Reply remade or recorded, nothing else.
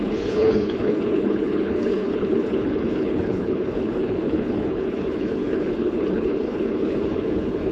remade